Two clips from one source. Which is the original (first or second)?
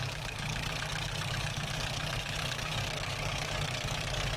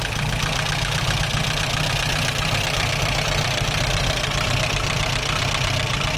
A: second